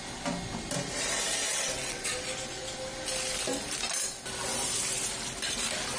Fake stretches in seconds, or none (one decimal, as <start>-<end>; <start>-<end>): 1.5-2.1